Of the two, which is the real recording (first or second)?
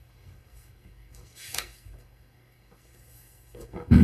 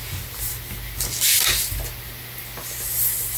second